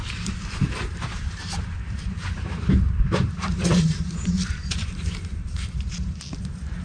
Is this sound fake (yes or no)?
yes